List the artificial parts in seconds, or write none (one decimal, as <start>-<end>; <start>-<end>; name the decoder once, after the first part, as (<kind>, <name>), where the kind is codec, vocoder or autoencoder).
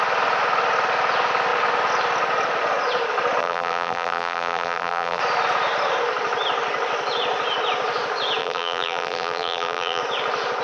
3.4-5.2 (vocoder, BigVGAN v2); 8.4-10.0